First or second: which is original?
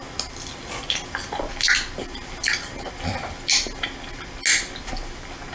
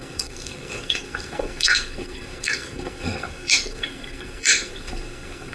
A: first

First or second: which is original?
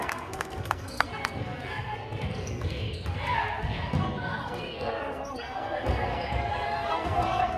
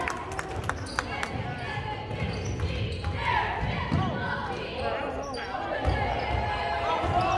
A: second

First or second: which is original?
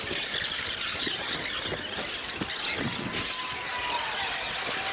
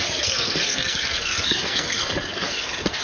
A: first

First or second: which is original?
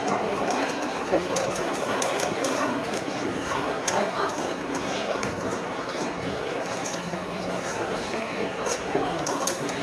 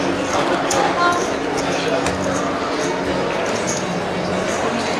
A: second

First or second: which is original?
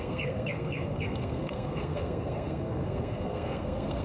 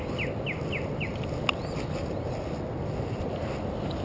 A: second